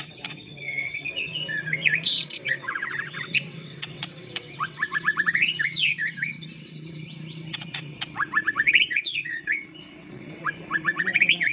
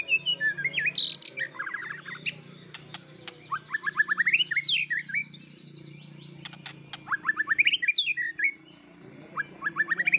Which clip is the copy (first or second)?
first